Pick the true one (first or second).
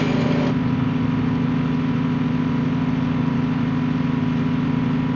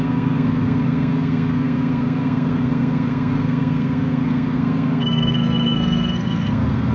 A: first